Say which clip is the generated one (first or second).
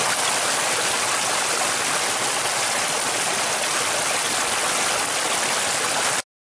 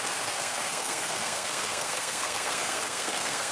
second